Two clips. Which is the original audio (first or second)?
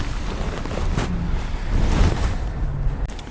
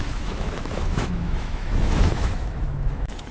first